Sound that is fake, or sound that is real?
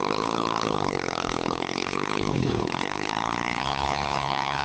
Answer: fake